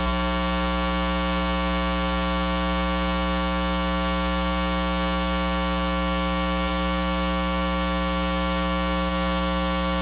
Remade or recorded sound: recorded